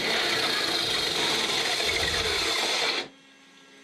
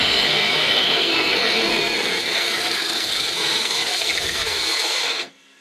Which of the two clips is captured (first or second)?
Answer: first